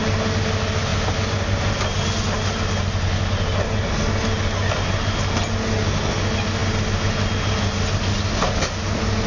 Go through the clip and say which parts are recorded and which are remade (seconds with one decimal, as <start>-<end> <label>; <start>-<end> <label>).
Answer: 0.0-9.3 recorded